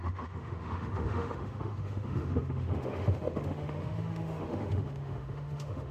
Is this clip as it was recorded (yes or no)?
no